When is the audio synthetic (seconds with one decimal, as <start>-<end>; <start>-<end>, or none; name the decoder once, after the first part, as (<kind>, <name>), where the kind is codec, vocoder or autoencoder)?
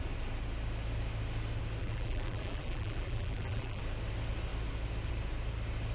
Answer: 1.8-3.8 (vocoder, BigVGAN v2)